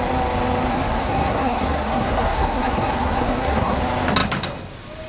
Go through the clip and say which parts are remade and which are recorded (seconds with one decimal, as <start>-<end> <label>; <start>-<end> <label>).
0.0-0.7 recorded; 0.7-3.8 remade; 3.8-5.1 recorded